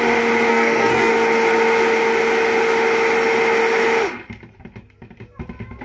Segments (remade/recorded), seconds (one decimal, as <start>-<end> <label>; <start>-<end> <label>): 0.0-0.5 recorded; 0.5-1.1 remade; 1.1-5.8 recorded